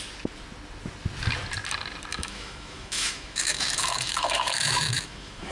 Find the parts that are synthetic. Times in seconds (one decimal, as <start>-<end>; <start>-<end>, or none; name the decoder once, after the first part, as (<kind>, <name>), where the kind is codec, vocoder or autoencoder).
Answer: 2.1-5.5 (autoencoder, DAC-VAE)